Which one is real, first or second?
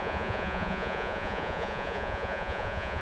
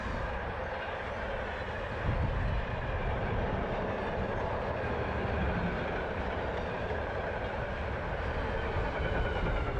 second